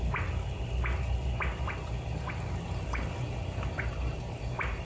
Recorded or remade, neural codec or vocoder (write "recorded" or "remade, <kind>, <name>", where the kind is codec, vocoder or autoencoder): recorded